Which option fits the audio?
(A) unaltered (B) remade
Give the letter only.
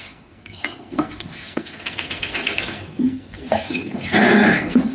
B